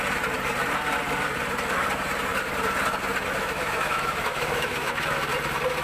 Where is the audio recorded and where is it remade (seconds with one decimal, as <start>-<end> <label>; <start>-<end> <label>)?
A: 0.0-3.4 recorded; 3.4-5.3 remade; 5.3-5.8 recorded